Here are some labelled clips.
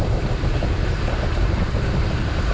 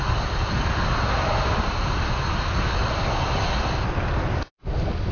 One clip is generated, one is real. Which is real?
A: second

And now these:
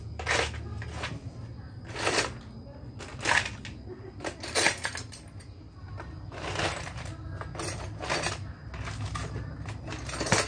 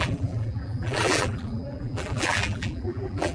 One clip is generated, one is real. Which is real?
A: first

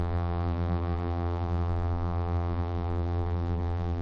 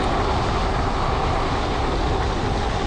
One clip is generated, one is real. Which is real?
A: second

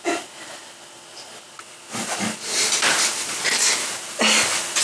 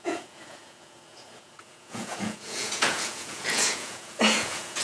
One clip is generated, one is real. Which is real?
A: first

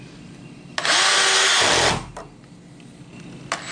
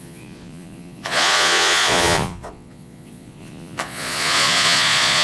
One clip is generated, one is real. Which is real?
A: first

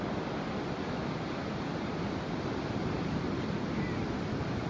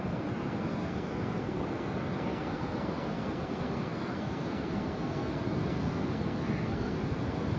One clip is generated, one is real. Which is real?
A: first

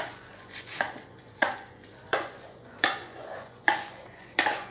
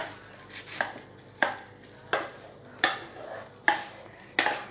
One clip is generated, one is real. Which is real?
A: second